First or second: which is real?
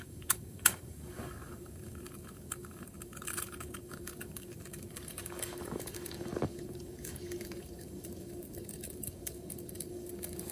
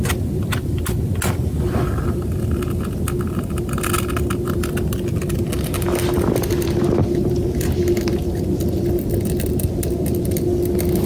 second